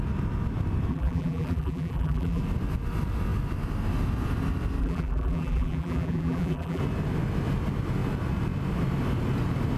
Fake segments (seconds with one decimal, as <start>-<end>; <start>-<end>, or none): 0.9-2.4; 4.8-6.8